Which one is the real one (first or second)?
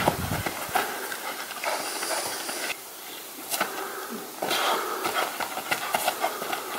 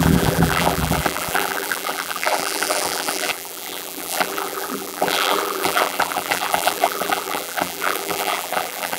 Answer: first